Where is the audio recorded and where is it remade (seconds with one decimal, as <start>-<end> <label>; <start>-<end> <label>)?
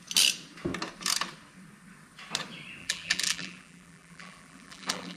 0.0-2.8 recorded; 2.8-5.2 remade